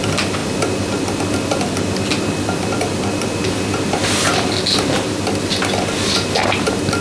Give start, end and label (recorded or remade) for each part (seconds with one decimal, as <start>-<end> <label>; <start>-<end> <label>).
0.0-7.0 recorded